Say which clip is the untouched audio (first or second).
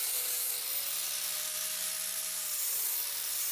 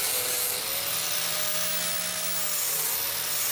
second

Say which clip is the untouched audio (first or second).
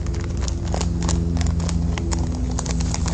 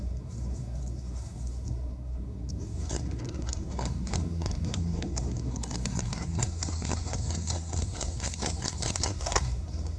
first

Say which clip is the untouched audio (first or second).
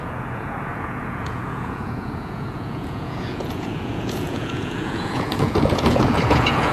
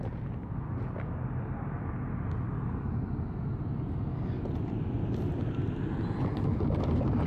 second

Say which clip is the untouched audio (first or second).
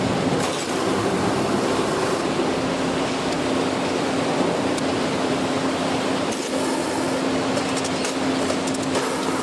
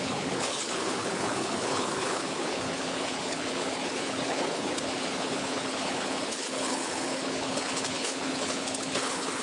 first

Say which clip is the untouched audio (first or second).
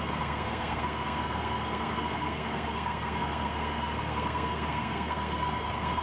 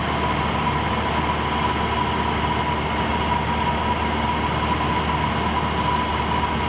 second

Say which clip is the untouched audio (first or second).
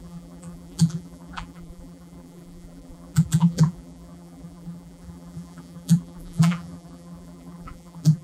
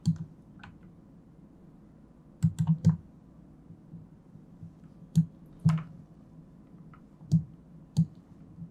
second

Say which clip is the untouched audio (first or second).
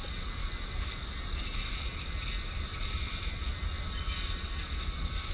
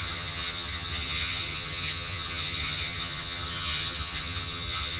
first